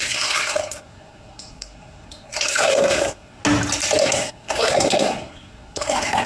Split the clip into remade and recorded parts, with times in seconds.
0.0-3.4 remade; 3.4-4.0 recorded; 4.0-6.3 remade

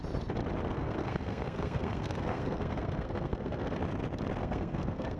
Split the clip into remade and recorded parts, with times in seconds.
0.0-0.7 recorded; 0.7-3.8 remade; 3.8-4.4 recorded; 4.4-5.2 remade